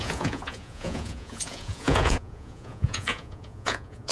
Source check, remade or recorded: remade